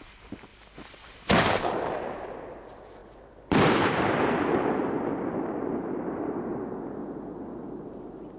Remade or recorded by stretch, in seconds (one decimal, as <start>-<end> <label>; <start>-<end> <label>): 0.0-0.5 recorded; 0.5-1.7 remade; 1.7-3.0 recorded; 3.0-6.4 remade; 6.4-8.4 recorded